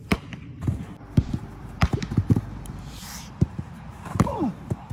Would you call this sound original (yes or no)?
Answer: no